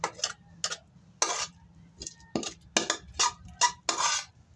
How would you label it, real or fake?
real